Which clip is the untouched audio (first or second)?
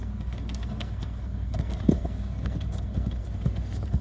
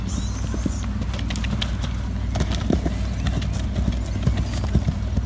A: second